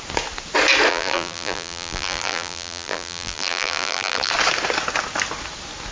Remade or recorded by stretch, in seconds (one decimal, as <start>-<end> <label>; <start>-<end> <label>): 0.0-0.9 recorded; 0.9-4.3 remade; 4.3-5.9 recorded